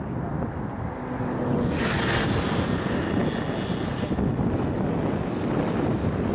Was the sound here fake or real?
real